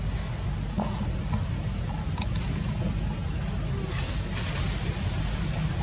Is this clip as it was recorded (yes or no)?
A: yes